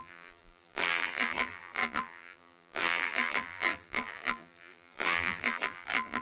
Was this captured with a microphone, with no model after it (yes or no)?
no